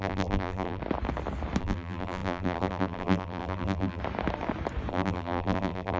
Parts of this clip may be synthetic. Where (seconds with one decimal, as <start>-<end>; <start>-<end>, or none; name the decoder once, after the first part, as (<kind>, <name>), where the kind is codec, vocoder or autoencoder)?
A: 0.0-0.8 (vocoder, BigVGAN v2); 1.6-4.0; 4.9-6.0